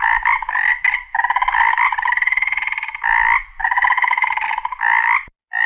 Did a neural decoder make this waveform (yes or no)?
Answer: no